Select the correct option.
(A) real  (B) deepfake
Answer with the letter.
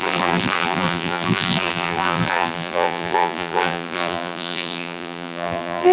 B